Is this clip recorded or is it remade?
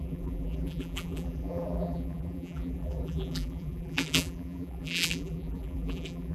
remade